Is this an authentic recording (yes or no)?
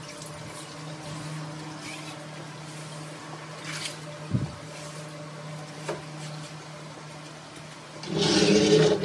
yes